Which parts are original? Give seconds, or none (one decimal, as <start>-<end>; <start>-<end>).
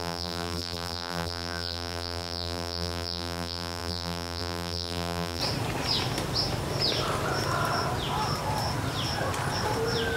5.4-10.2